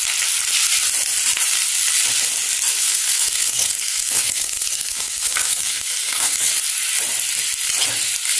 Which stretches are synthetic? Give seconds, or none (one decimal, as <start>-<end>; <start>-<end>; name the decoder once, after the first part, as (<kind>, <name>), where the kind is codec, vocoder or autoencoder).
2.8-6.5 (codec, SNAC)